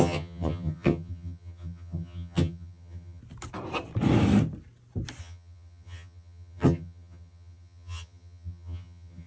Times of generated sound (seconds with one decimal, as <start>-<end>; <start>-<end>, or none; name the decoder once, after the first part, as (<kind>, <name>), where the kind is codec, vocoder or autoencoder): 0.0-3.2 (vocoder, HiFi-GAN); 5.2-9.3